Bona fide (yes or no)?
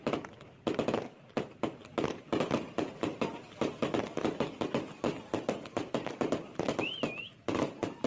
yes